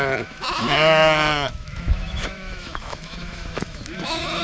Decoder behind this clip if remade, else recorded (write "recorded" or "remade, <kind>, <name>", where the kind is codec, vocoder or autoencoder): remade, autoencoder, DAC-VAE